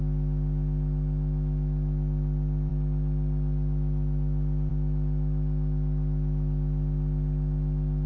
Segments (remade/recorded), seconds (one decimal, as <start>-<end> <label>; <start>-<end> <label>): 0.0-8.1 recorded